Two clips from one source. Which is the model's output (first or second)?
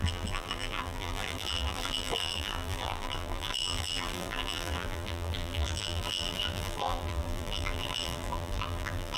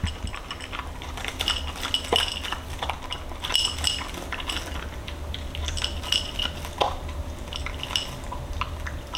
first